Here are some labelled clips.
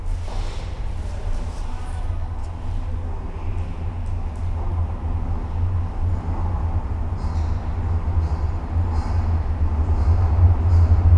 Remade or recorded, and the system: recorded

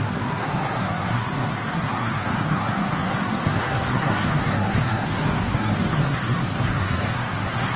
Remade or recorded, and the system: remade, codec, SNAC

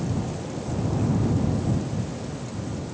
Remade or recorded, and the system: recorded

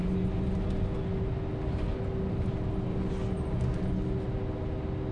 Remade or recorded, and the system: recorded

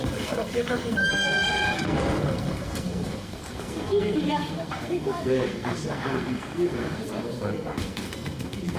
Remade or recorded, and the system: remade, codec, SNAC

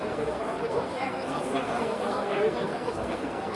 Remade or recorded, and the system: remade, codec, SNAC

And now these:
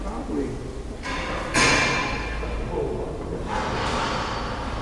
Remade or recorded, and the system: recorded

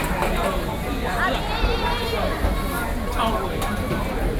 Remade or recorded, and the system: recorded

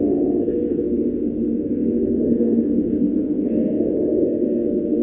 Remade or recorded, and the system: remade, codec, SNAC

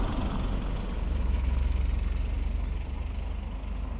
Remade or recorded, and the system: recorded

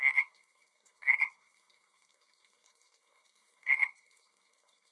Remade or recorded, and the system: remade, codec, SNAC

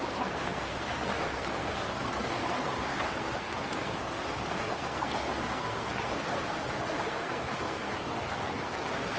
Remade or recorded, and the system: remade, codec, SNAC